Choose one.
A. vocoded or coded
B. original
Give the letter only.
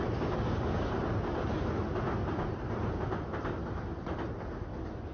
B